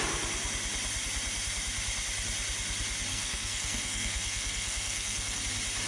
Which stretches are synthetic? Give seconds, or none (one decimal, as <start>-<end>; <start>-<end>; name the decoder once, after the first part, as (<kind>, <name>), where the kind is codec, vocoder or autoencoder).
3.1-5.4 (codec, SNAC)